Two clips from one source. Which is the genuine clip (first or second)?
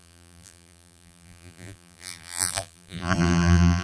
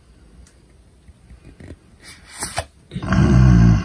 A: second